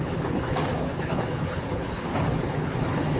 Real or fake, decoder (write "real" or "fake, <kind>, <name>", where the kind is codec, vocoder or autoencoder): fake, codec, HILCodec